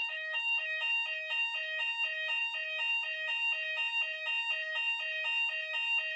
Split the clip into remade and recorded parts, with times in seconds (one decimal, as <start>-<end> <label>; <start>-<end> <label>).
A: 0.0-0.8 remade; 0.8-6.2 recorded